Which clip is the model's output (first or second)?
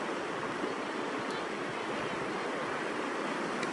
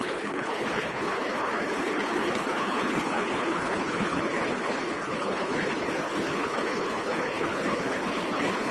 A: second